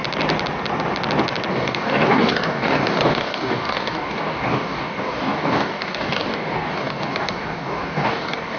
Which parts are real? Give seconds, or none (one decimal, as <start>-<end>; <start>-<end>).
0.0-1.5